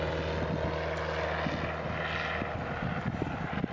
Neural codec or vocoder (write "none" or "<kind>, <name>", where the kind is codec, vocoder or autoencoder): none